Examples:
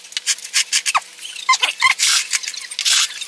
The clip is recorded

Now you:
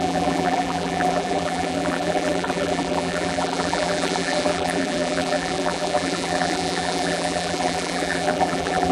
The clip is remade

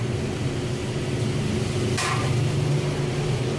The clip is recorded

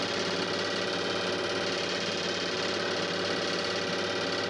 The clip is recorded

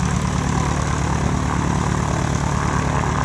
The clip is recorded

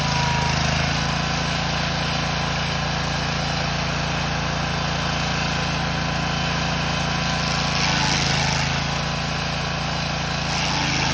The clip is recorded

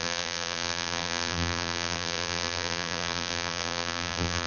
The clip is remade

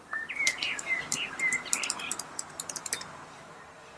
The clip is remade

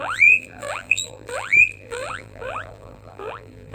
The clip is remade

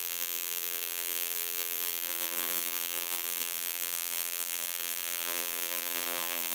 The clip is remade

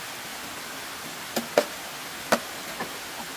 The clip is recorded